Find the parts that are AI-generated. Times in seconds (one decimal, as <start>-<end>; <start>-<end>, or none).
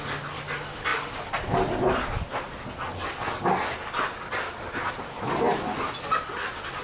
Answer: none